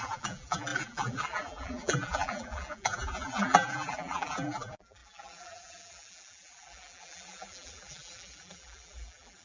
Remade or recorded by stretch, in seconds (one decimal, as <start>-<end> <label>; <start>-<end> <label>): 0.0-9.4 remade